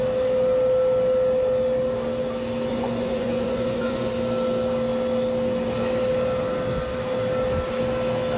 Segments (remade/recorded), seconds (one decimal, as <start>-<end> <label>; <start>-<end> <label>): 0.0-2.7 recorded; 2.7-4.1 remade; 4.1-8.4 recorded